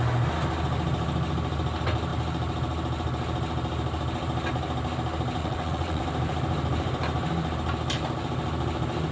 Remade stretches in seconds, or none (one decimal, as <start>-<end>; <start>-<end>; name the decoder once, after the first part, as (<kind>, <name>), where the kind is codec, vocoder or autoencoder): 5.4-6.0 (vocoder, WaveNeXt)